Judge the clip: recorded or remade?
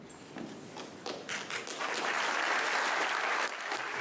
recorded